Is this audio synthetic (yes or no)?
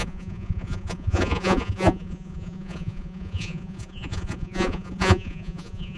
yes